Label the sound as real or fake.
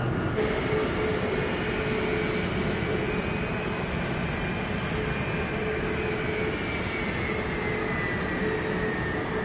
real